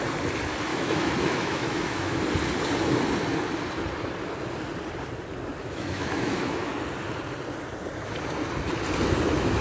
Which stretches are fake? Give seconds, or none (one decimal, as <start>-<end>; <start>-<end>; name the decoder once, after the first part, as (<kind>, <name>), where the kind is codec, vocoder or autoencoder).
0.7-2.2 (autoencoder, DAC-VAE); 5.6-6.7